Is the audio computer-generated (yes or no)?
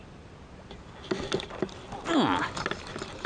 no